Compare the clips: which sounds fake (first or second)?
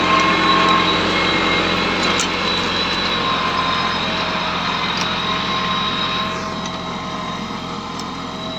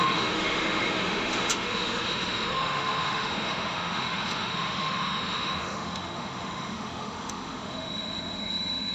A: second